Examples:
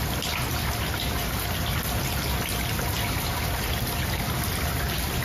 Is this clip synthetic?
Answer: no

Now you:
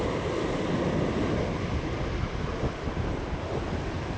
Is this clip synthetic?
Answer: no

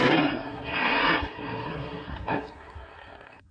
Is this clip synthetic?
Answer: yes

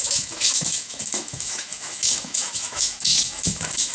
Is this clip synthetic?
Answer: yes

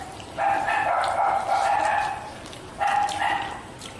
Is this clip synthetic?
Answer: yes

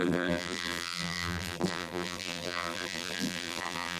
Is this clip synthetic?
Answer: yes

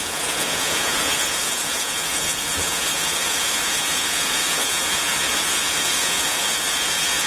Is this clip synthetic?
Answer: yes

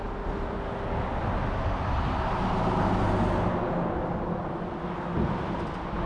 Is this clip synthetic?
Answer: no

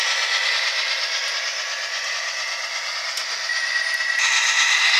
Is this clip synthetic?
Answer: no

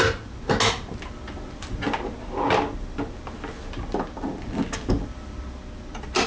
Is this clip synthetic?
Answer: no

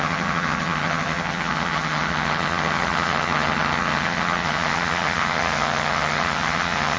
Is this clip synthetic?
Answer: yes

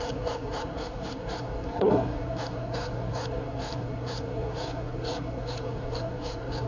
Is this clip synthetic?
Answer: yes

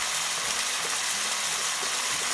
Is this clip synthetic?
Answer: no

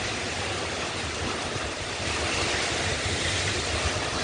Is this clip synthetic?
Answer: no